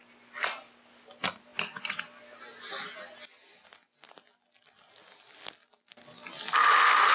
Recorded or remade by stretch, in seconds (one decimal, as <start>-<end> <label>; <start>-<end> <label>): 0.0-7.1 recorded